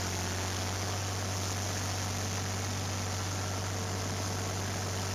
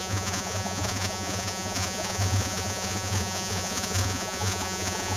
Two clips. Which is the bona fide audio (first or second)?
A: first